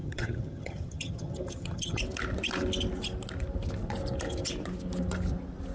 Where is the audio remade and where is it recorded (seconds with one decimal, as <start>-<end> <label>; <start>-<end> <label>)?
0.0-2.0 remade; 2.0-5.7 recorded